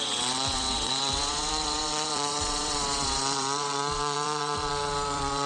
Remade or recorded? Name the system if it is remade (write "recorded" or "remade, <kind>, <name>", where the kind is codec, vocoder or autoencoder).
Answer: remade, vocoder, WaveNeXt